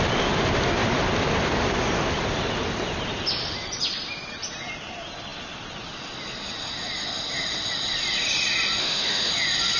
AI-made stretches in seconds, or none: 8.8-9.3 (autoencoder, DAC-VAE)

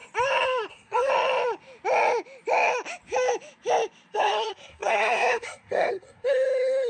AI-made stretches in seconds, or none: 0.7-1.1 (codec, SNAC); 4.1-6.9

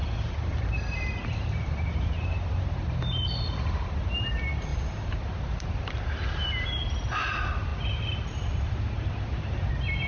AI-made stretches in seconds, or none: 1.2-2.4 (vocoder, BigVGAN v2); 4.7-5.9; 7.7-9.7

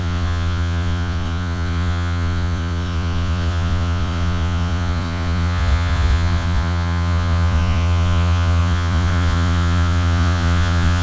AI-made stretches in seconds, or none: 0.0-11.0 (vocoder, Vocos)

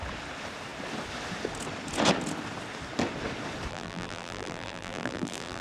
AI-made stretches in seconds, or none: 3.7-5.6 (vocoder, BigVGAN v2)